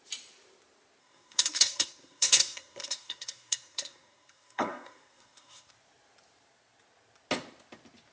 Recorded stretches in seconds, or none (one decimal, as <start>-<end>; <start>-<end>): 0.0-1.0; 5.7-8.1